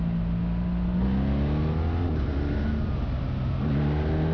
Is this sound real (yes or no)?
yes